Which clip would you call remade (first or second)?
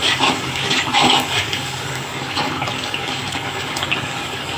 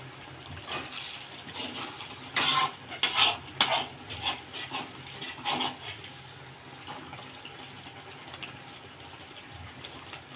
first